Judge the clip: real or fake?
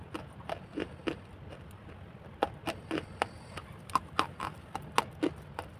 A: real